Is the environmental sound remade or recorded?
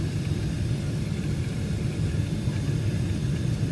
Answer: remade